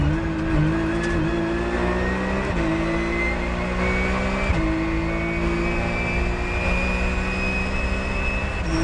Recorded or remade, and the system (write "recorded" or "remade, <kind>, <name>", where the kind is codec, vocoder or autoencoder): recorded